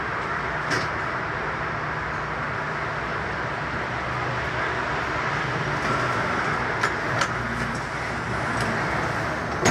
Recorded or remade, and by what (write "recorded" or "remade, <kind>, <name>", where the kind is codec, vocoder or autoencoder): recorded